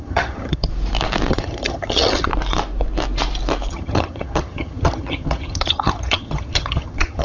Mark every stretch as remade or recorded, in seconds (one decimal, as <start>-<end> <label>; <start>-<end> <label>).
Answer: 0.0-0.7 remade; 0.7-1.3 recorded; 1.3-2.3 remade; 2.3-3.7 recorded; 3.7-7.2 remade